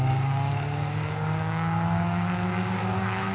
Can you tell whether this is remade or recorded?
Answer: remade